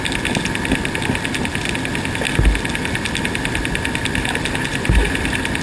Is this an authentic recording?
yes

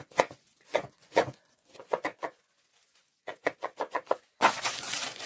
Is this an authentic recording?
no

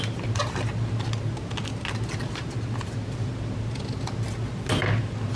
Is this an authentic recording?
yes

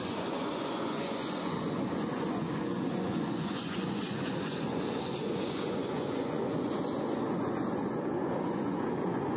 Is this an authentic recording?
no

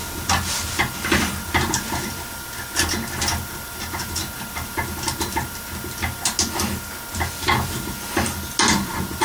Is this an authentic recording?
yes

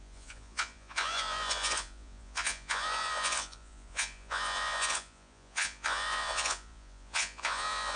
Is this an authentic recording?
no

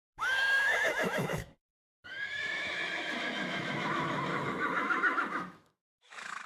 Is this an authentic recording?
no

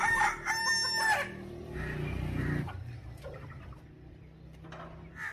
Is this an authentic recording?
yes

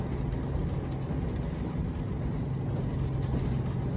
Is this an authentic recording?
yes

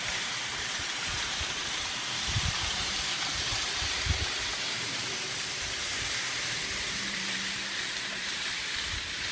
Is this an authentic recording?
no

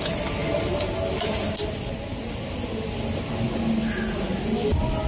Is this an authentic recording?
yes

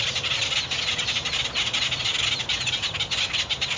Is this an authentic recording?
yes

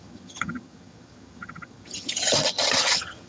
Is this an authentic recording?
no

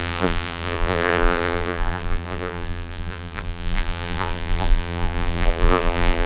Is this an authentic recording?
no